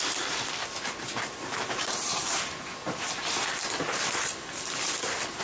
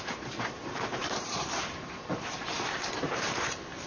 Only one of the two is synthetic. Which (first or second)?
second